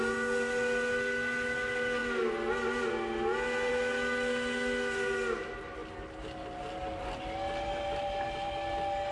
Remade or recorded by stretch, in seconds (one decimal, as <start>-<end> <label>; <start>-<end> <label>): 0.0-9.1 recorded